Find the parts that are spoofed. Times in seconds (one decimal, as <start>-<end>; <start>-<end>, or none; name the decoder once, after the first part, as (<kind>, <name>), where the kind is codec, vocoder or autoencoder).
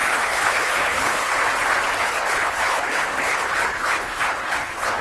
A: 0.0-1.4 (codec, HILCodec); 2.0-5.0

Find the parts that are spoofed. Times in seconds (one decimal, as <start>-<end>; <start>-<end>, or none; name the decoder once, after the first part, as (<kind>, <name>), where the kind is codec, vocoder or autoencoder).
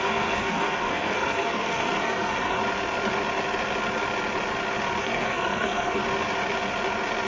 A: 0.0-2.6 (codec, SNAC); 5.0-6.0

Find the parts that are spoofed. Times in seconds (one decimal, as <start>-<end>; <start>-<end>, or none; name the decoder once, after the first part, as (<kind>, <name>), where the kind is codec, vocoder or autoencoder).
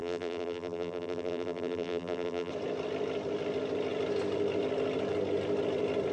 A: 0.0-2.5 (vocoder, BigVGAN v2)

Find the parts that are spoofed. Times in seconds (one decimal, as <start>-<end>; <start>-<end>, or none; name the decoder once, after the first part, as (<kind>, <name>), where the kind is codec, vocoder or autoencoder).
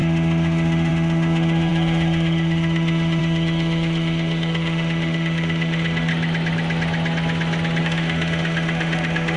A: 0.0-6.1 (autoencoder, DAC-VAE); 7.8-9.4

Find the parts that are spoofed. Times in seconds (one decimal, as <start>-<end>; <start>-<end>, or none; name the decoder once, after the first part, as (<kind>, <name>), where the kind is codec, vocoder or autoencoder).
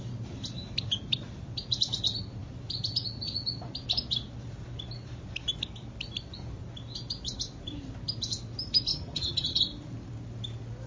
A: 8.9-9.6 (vocoder, HiFi-GAN)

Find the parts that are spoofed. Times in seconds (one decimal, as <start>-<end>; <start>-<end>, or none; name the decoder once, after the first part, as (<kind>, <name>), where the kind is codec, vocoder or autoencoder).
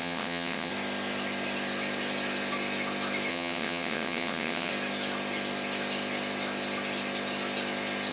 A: 0.0-0.7 (vocoder, WaveNeXt); 3.3-4.7